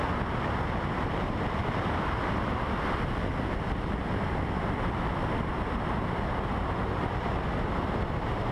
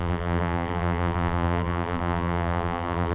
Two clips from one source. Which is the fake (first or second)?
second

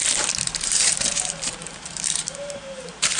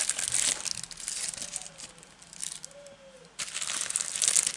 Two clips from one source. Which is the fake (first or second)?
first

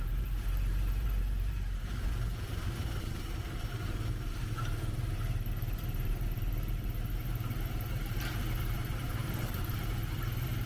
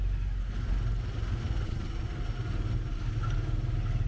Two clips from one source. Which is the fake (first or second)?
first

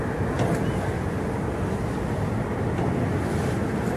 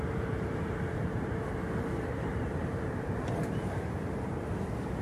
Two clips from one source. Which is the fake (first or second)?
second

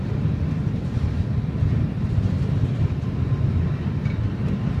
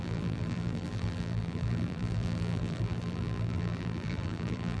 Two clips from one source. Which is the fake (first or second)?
second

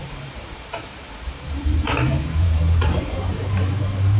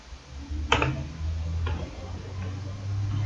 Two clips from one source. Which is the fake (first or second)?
first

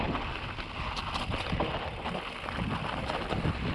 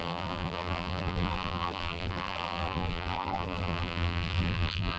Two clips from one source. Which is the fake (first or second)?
second